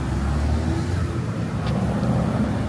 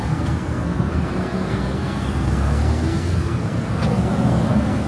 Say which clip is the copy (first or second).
second